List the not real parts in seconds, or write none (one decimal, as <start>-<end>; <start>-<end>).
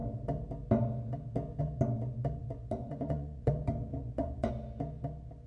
2.4-3.5; 3.9-4.5